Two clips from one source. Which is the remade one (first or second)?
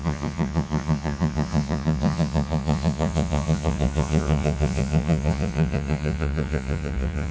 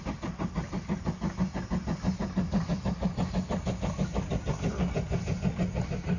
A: first